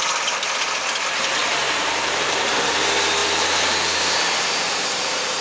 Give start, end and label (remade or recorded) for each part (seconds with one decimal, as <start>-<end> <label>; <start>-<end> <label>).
0.0-1.4 recorded; 1.4-2.5 remade; 2.5-3.2 recorded; 3.2-5.4 remade